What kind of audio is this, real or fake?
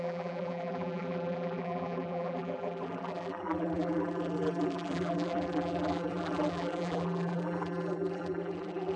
fake